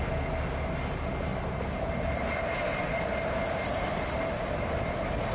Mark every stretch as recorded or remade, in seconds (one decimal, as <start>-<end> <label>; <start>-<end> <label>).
0.0-5.3 recorded